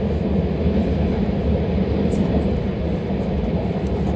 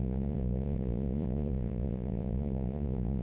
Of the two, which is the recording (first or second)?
first